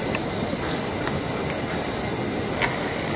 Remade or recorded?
recorded